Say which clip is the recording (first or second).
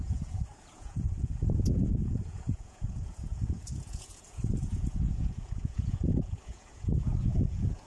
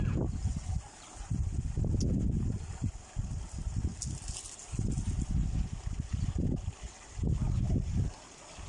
second